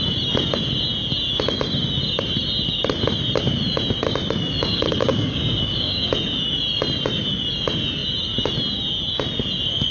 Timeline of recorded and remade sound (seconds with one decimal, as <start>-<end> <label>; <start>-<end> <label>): 0.0-4.7 recorded; 4.7-6.1 remade; 6.1-9.9 recorded